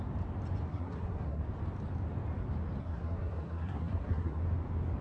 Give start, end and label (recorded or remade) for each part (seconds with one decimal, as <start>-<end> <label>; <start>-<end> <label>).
0.0-0.7 recorded; 0.7-1.4 remade; 1.4-2.8 recorded; 2.8-4.4 remade; 4.4-5.0 recorded